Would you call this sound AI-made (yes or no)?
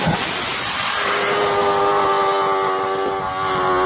no